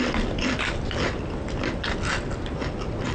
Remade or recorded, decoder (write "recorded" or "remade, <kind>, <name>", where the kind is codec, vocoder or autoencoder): recorded